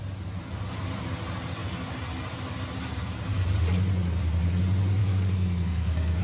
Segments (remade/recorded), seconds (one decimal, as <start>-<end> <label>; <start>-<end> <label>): 0.0-5.0 recorded; 5.0-6.2 remade